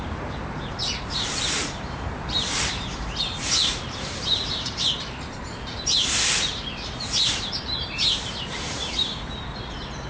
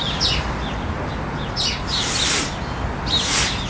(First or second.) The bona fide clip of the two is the second